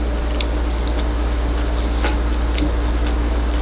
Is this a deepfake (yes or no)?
no